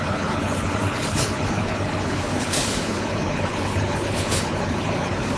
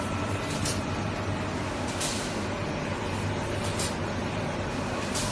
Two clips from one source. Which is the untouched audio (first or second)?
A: second